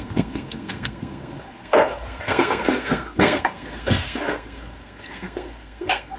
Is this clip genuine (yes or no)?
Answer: no